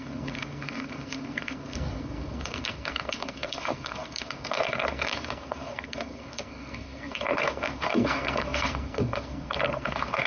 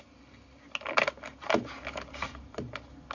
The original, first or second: second